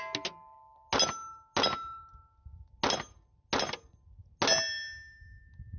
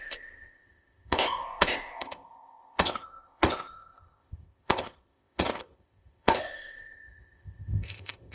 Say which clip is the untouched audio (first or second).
first